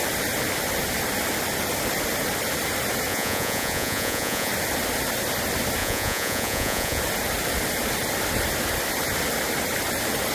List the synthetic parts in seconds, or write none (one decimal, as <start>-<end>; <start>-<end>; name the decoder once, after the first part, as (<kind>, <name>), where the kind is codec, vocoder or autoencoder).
3.1-4.5 (vocoder, Vocos); 5.8-7.0